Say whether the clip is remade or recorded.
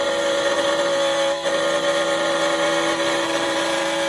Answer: remade